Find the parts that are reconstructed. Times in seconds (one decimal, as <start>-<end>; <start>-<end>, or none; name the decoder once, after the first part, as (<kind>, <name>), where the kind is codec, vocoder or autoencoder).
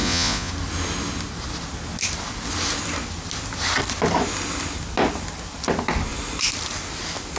0.0-0.5 (vocoder, Vocos)